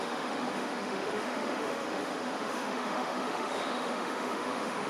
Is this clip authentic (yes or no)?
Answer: no